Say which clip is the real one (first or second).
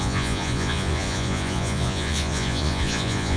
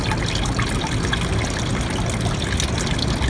second